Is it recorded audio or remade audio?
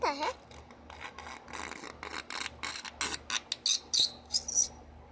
recorded